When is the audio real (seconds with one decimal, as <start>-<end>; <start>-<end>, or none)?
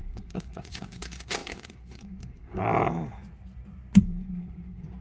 2.6-4.0